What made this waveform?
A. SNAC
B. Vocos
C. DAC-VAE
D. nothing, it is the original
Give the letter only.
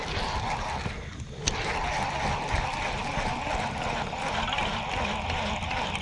D